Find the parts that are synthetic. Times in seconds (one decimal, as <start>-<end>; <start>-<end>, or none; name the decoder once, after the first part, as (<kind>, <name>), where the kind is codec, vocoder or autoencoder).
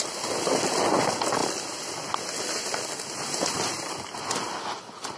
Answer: none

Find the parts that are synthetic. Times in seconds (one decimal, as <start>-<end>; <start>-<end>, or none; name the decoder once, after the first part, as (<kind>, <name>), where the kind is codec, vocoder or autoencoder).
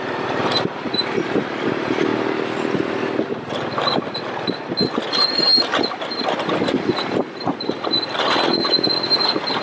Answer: 0.0-2.1 (vocoder, BigVGAN v2); 5.1-5.5; 7.4-9.6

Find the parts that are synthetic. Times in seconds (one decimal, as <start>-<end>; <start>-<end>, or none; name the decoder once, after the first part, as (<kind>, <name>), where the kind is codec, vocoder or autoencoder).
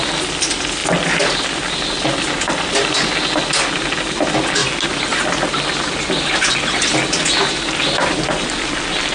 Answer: none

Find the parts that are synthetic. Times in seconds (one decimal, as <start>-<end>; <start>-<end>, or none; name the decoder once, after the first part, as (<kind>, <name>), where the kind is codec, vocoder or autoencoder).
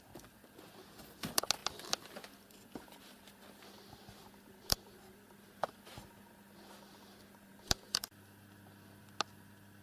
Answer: none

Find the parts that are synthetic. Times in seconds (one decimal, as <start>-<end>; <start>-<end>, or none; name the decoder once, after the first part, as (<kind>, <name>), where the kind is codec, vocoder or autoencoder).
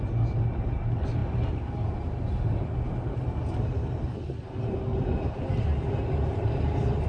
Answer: none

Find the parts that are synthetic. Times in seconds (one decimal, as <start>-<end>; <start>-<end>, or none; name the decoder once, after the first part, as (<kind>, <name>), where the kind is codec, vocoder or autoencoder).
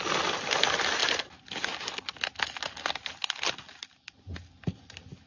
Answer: none